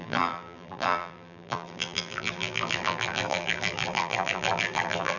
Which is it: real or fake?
fake